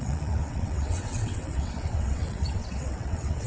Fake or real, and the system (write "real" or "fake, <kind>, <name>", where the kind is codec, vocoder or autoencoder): fake, vocoder, WaveNeXt